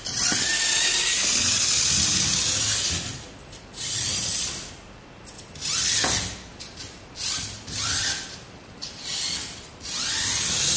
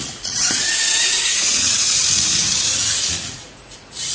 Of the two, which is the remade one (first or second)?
second